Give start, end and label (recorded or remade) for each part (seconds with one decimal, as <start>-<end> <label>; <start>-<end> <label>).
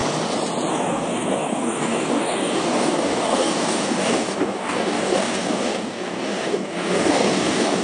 0.0-0.7 recorded; 0.7-7.8 remade